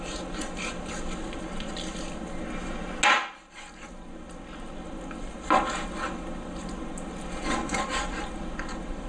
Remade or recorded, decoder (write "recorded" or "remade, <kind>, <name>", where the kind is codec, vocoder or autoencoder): recorded